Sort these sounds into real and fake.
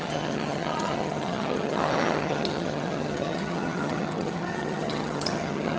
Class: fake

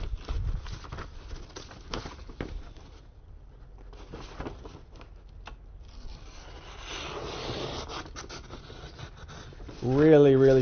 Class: real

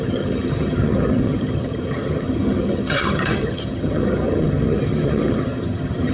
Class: fake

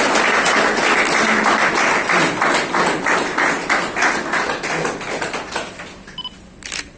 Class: real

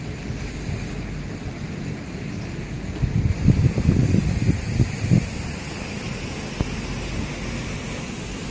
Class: real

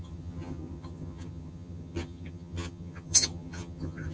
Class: fake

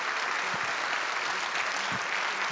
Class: real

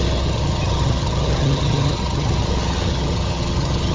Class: fake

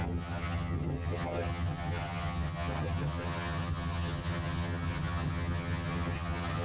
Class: fake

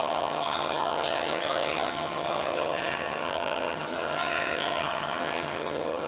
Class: fake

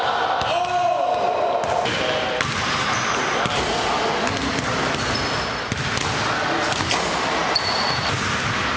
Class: real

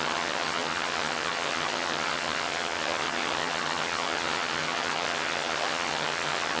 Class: fake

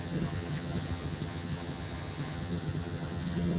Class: fake